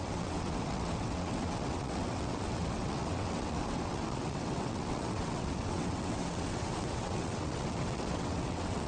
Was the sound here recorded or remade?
remade